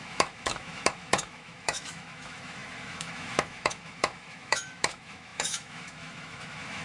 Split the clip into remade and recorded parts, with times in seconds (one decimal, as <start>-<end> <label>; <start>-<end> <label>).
0.0-6.8 remade